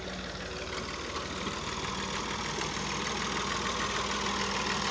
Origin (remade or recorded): recorded